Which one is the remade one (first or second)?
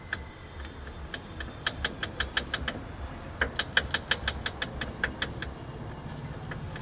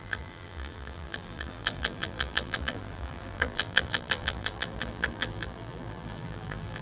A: second